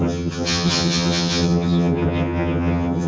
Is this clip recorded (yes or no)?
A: no